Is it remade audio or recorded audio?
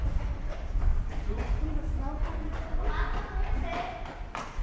recorded